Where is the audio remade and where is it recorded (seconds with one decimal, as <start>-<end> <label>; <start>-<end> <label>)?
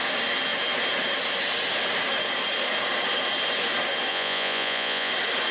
0.0-4.1 recorded; 4.1-5.1 remade; 5.1-5.5 recorded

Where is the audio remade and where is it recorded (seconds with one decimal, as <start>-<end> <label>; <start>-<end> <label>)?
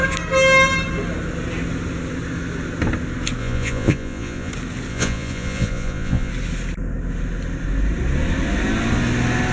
0.0-3.4 recorded; 3.4-4.5 remade; 4.5-4.9 recorded; 4.9-6.3 remade; 6.3-9.5 recorded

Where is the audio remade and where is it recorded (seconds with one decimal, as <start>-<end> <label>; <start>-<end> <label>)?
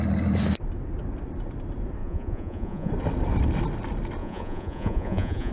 0.0-2.0 recorded; 2.0-2.9 remade; 2.9-4.2 recorded; 4.2-5.5 remade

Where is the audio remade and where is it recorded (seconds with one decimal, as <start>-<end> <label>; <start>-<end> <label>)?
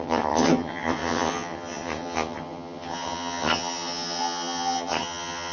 0.0-5.5 remade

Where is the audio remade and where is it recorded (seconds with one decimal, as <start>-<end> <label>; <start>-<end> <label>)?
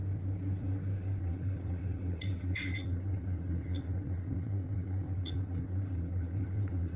0.0-1.2 recorded; 1.2-7.0 remade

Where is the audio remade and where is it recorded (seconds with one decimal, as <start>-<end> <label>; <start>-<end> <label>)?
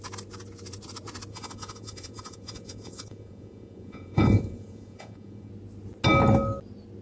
0.0-1.3 recorded; 1.3-5.5 remade; 5.5-7.0 recorded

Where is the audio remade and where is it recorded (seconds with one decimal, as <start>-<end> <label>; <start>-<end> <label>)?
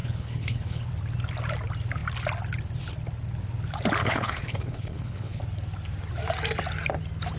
0.0-0.9 remade; 0.9-4.0 recorded; 4.0-5.4 remade; 5.4-7.4 recorded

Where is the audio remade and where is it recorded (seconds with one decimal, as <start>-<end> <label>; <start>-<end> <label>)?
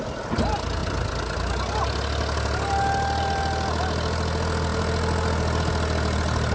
0.0-6.5 recorded